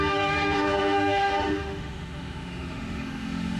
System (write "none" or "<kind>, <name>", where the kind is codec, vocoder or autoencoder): autoencoder, DAC-VAE